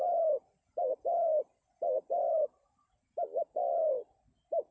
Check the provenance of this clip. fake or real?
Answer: real